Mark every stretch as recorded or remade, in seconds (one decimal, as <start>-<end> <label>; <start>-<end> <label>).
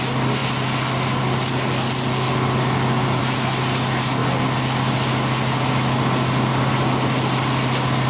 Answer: 0.0-8.1 recorded